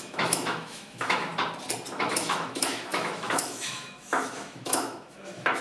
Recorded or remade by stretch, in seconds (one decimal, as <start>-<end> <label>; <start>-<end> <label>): 0.0-1.3 remade; 1.3-1.9 recorded; 1.9-5.6 remade